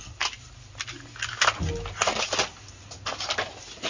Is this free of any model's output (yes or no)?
yes